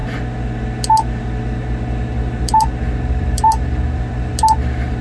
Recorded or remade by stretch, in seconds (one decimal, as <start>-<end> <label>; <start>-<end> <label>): 0.0-2.4 recorded; 2.4-4.3 remade; 4.3-5.0 recorded

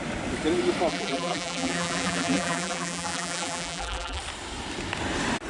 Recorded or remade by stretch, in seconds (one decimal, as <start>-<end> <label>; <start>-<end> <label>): 0.0-0.9 recorded; 0.9-4.2 remade; 4.2-5.5 recorded

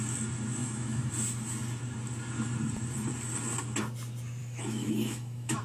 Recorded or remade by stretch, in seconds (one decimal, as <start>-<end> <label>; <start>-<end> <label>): 0.0-0.6 recorded; 0.6-1.1 remade; 1.1-4.4 recorded; 4.4-5.6 remade

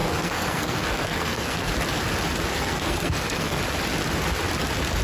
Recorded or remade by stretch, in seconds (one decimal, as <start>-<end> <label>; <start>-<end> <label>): 0.0-1.7 remade; 1.7-2.5 recorded; 2.5-3.6 remade; 3.6-5.0 recorded

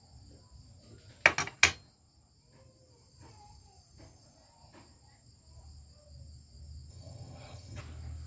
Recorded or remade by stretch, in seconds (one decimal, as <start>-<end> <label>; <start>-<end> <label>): 0.0-6.9 recorded; 6.9-7.8 remade; 7.8-8.3 recorded

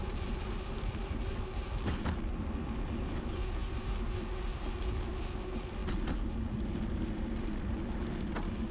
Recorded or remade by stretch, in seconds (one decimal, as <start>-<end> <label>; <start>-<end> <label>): 0.0-8.7 recorded

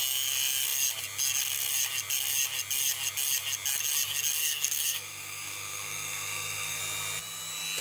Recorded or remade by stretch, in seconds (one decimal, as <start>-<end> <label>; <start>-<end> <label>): 0.0-4.4 recorded; 4.4-6.8 remade; 6.8-7.8 recorded